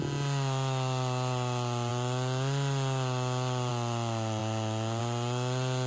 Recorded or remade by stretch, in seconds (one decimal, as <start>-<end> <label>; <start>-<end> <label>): 0.0-5.9 recorded